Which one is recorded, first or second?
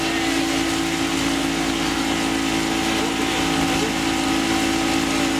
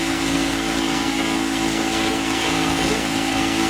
first